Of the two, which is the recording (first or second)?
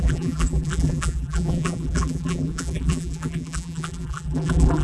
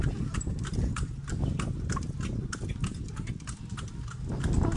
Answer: second